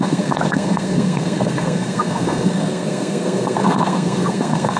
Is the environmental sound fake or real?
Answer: fake